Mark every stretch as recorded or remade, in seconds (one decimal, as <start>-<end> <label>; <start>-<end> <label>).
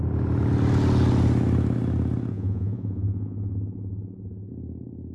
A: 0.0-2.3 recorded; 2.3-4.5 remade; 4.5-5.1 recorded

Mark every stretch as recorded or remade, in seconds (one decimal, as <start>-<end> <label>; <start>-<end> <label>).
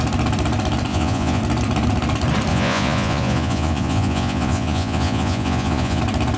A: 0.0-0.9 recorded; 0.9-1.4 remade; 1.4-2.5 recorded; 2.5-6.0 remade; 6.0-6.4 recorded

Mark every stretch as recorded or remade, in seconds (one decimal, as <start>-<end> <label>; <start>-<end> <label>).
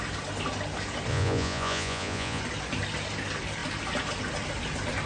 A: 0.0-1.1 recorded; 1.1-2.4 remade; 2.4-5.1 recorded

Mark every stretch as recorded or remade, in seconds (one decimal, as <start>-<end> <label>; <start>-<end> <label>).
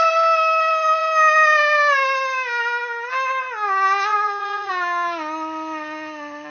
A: 0.0-4.1 recorded; 4.1-4.7 remade; 4.7-6.5 recorded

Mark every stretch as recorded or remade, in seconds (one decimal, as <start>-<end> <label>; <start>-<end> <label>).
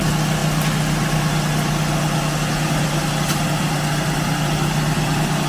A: 0.0-5.5 recorded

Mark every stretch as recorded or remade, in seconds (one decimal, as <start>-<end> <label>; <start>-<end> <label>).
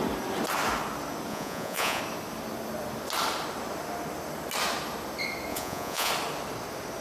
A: 0.0-1.3 recorded; 1.3-2.0 remade; 2.0-5.5 recorded; 5.5-6.1 remade; 6.1-7.0 recorded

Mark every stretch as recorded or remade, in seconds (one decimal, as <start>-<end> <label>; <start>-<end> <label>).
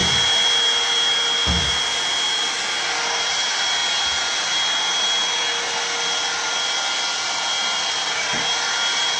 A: 0.0-9.2 recorded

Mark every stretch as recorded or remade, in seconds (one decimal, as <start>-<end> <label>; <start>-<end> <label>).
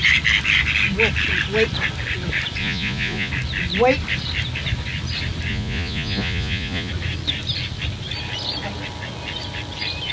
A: 0.0-2.6 recorded; 2.6-3.3 remade; 3.3-5.5 recorded; 5.5-6.9 remade; 6.9-10.1 recorded